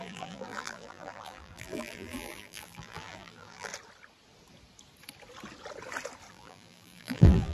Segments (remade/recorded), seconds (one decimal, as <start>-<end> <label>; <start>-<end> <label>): 0.0-3.7 remade; 3.7-6.3 recorded; 6.3-7.5 remade

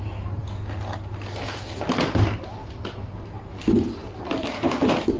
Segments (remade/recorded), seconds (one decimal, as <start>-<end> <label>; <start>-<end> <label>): 0.0-5.2 recorded

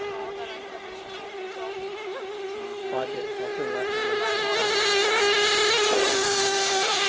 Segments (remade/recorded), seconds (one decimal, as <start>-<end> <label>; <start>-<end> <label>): 0.0-6.1 recorded; 6.1-7.1 remade

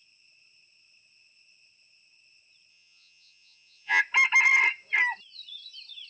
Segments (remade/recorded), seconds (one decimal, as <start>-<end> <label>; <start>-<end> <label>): 0.0-2.7 recorded; 2.7-4.0 remade; 4.0-6.1 recorded

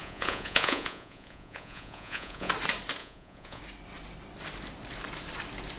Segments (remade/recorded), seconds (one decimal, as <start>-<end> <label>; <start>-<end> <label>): 0.0-2.5 remade; 2.5-3.0 recorded; 3.0-3.6 remade; 3.6-5.8 recorded

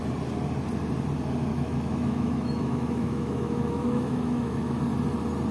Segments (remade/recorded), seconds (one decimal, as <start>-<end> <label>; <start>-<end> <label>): 0.0-1.5 recorded; 1.5-4.8 remade; 4.8-5.5 recorded